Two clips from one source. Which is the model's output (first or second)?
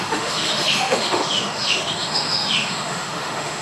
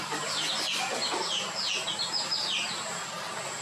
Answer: first